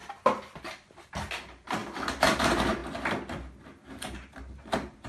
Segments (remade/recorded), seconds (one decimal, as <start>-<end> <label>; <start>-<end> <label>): 0.0-1.3 recorded; 1.3-1.8 remade; 1.8-2.4 recorded; 2.4-2.8 remade; 2.8-3.9 recorded; 3.9-5.1 remade